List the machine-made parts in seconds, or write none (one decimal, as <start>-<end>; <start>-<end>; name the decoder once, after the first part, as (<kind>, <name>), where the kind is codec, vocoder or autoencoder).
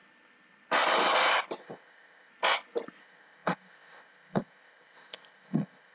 1.6-2.3 (codec, ZipCodec); 3.0-5.9